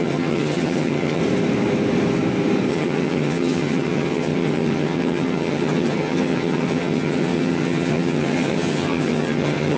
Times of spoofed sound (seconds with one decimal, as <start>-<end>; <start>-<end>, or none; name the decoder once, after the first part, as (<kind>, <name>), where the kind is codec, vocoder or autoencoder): 0.0-1.2 (vocoder, HiFi-GAN); 2.7-9.8